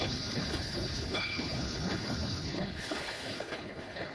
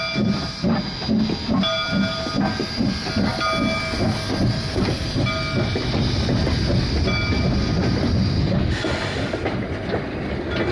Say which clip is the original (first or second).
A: second